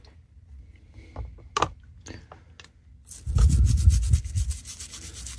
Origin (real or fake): real